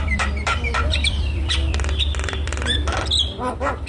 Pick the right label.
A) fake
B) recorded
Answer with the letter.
A